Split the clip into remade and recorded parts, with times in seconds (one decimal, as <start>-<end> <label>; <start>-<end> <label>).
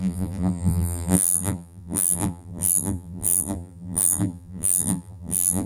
0.0-5.7 remade